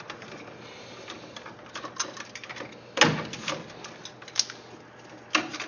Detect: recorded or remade recorded